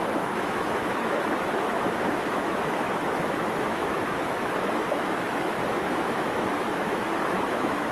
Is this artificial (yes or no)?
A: yes